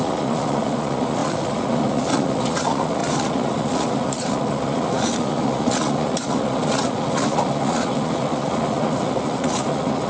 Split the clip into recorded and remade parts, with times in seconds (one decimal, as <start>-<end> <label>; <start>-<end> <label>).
0.0-10.1 remade